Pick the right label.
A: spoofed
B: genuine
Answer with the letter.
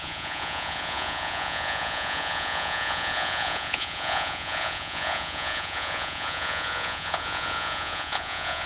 A